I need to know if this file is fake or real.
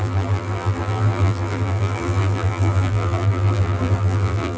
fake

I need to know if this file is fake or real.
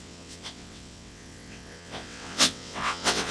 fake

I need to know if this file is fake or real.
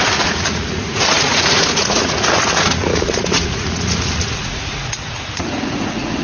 fake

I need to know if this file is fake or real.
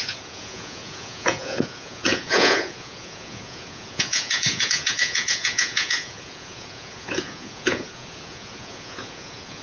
fake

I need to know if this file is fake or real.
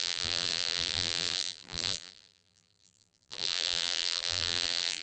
fake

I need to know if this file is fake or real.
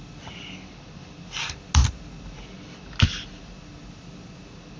real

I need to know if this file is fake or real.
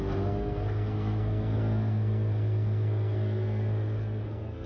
fake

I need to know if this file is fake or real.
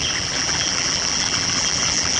fake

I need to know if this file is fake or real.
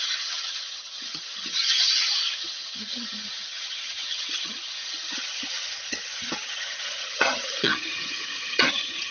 fake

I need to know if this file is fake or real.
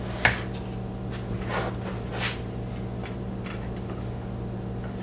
real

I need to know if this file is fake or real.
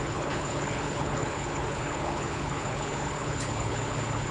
fake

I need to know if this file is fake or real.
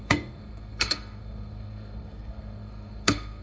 fake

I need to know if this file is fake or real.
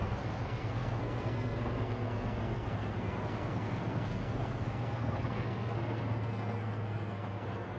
fake